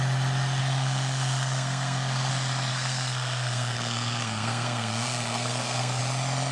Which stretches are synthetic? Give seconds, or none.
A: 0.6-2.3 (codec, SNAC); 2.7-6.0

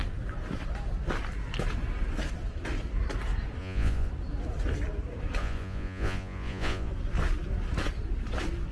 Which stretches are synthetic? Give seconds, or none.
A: 3.6-4.1 (vocoder, Vocos); 5.4-6.9

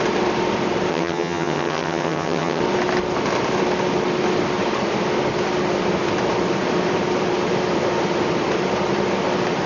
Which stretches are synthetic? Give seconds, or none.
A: 0.9-2.6 (vocoder, HiFi-GAN)

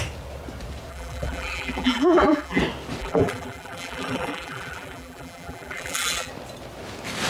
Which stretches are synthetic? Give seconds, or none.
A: 0.9-2.6 (vocoder, BigVGAN v2); 3.0-6.3

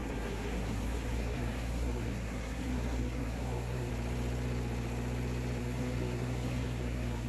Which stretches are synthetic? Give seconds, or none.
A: 0.0-3.9 (codec, SNAC); 5.6-7.3

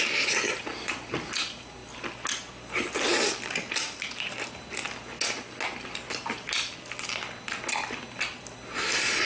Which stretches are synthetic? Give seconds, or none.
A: none